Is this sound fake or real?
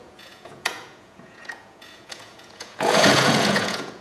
fake